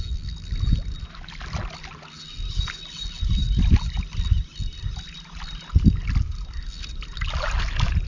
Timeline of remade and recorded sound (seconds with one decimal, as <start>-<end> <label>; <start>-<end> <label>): 0.0-3.4 recorded; 3.4-4.0 remade; 4.0-8.1 recorded